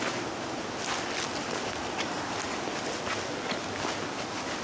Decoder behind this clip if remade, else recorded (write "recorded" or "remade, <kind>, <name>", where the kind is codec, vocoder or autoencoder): recorded